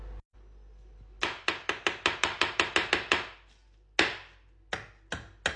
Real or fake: real